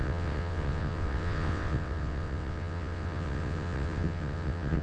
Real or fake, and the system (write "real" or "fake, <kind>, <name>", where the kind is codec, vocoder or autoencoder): fake, vocoder, WaveNeXt